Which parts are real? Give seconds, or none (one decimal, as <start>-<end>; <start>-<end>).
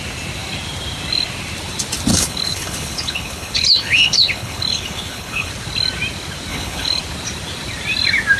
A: 0.0-2.1; 5.5-6.5; 7.0-8.4